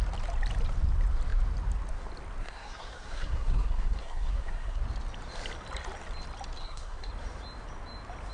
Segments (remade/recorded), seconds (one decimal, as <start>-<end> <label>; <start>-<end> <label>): 0.0-2.4 recorded; 2.4-4.8 remade; 4.8-6.6 recorded; 6.6-7.1 remade; 7.1-8.3 recorded